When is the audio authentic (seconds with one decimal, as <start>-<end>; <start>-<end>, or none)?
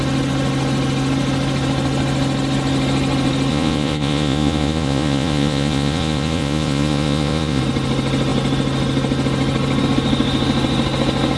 0.0-3.5; 7.6-11.4